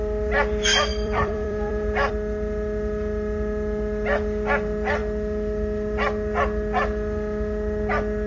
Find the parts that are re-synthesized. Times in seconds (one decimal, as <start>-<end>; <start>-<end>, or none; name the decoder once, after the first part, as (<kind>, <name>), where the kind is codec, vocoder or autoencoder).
0.9-2.1 (vocoder, BigVGAN v2)